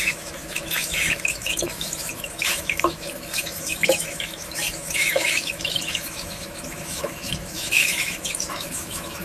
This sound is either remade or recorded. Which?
remade